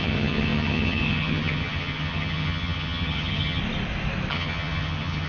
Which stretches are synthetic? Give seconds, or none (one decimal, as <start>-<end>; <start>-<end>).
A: 0.0-3.6; 4.3-5.3